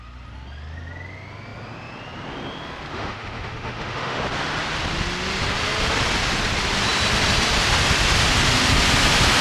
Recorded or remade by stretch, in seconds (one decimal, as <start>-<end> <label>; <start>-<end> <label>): 0.0-2.9 recorded; 2.9-4.2 remade; 4.2-9.4 recorded